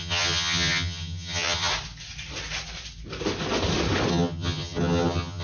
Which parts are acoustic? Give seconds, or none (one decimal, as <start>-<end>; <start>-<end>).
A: 1.7-4.1